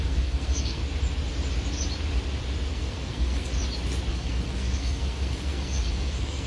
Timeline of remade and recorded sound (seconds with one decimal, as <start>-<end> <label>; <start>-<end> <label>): 0.0-0.8 remade; 0.8-2.7 recorded; 2.7-3.5 remade; 3.5-4.1 recorded; 4.1-6.5 remade